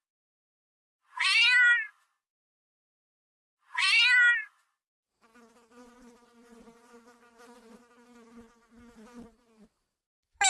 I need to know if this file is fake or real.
real